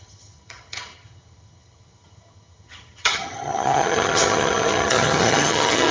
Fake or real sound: fake